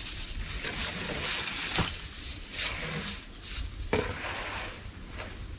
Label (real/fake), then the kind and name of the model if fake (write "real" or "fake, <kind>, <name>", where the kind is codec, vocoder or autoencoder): real